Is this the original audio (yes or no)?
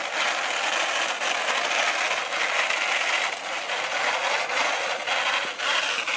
yes